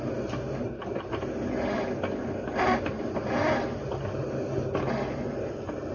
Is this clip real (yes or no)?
yes